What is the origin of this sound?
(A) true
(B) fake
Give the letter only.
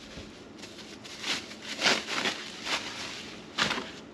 A